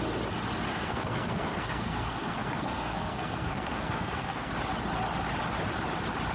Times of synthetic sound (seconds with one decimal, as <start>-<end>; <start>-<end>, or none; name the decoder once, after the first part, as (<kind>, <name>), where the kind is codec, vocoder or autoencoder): 0.7-4.5 (codec, SNAC)